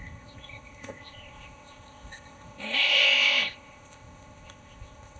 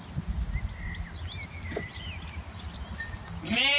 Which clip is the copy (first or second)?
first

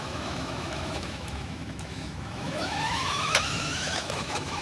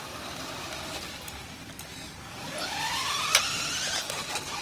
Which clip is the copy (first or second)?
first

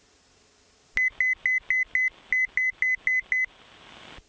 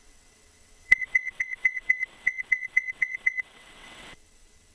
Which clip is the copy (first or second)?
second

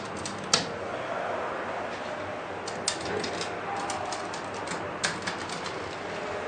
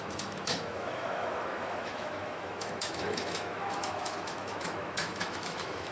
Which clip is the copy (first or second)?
second